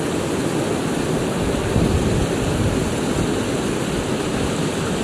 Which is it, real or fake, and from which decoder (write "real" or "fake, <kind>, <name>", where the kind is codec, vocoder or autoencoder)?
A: real